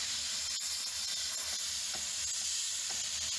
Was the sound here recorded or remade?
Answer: recorded